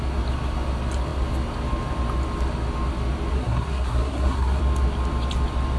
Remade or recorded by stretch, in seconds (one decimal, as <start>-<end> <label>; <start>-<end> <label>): 0.0-3.3 recorded; 3.3-4.6 remade; 4.6-5.8 recorded